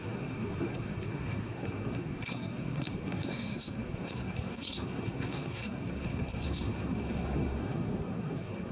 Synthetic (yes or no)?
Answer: yes